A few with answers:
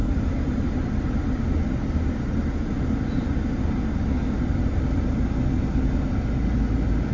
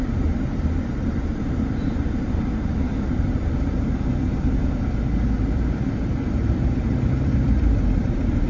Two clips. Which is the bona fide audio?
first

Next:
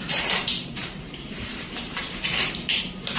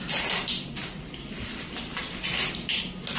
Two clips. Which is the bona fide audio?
second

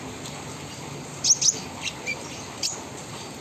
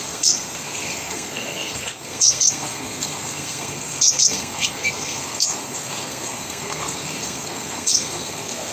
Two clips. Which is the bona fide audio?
first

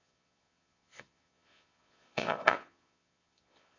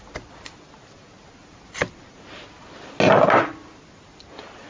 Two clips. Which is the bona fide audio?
second